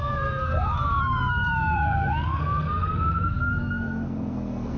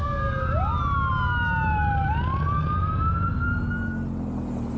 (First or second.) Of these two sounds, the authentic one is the second